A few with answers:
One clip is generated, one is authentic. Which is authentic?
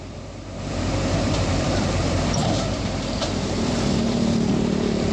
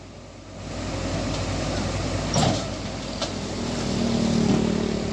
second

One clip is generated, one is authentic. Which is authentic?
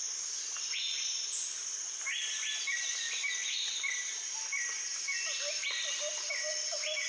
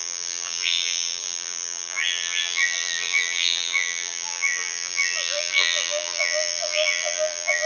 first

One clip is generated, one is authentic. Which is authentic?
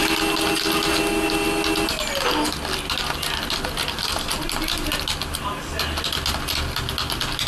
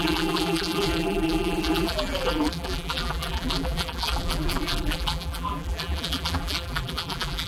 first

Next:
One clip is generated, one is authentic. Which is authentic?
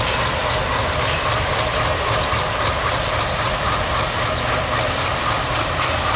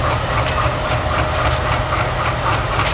second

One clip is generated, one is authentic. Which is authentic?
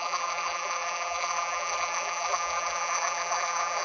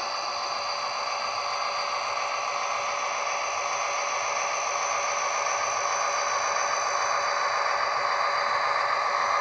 second